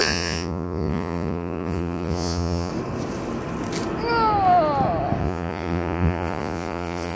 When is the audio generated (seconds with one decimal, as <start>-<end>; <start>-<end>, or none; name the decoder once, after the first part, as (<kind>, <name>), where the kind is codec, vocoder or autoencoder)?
0.0-2.7 (vocoder, Vocos); 5.2-7.2